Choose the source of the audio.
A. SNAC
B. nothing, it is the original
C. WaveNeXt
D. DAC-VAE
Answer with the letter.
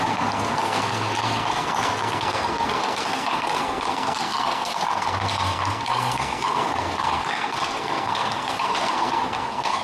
A